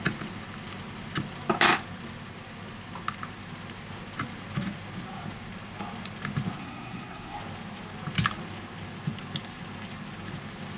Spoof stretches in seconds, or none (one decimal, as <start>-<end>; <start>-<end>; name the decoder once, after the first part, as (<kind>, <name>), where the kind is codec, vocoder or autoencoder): 6.6-7.4 (codec, SNAC)